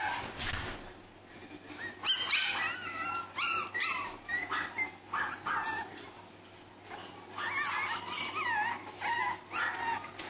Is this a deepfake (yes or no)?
no